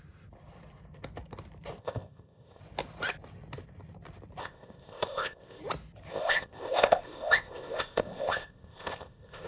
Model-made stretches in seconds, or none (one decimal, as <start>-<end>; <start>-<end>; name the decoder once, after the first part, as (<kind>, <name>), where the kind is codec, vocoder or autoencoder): 1.8-2.6 (codec, ZipCodec); 4.4-5.6; 6.1-9.5